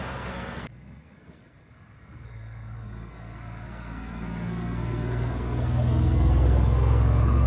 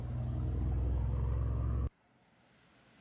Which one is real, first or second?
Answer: second